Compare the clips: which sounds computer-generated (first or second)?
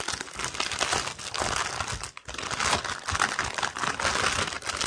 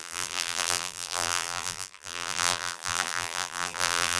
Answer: second